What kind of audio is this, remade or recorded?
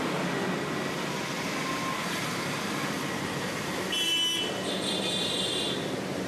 recorded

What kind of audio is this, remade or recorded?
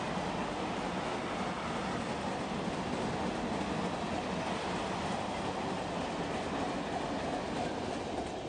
recorded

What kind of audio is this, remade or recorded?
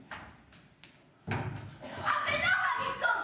recorded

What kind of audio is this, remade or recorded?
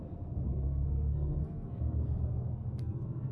remade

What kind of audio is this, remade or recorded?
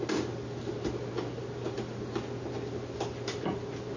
recorded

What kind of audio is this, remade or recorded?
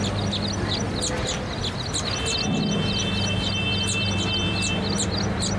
recorded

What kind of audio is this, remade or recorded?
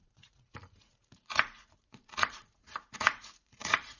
remade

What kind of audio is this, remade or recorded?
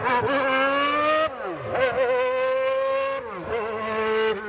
recorded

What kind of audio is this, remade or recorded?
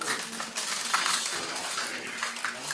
recorded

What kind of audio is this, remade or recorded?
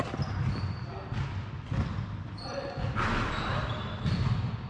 recorded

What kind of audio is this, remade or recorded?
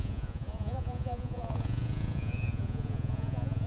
remade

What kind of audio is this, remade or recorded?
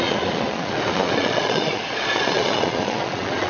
remade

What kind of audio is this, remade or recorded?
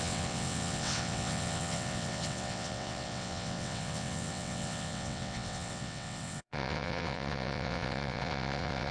remade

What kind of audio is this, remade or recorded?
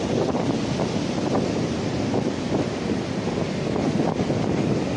recorded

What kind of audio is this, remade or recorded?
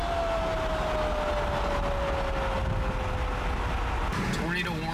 recorded